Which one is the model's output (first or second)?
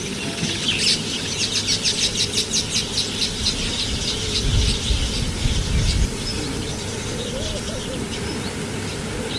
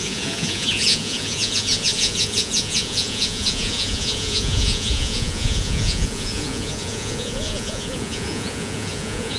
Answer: second